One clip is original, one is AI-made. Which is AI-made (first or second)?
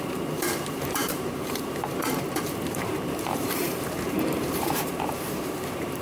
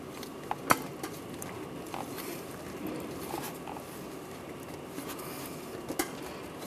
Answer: first